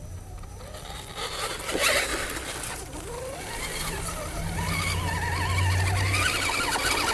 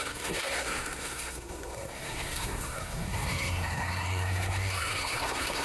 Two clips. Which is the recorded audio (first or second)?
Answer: first